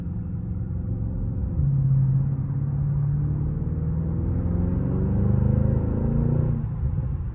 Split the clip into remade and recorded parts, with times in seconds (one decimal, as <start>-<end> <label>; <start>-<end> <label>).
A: 0.0-7.3 recorded